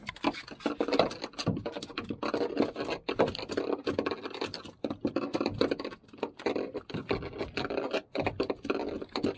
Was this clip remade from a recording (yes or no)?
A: no